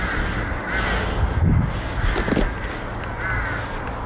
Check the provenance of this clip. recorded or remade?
recorded